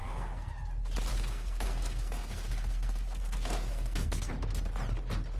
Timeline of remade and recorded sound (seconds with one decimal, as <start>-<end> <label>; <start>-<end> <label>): 0.0-0.5 remade; 0.5-1.1 recorded; 1.1-4.3 remade; 4.3-5.4 recorded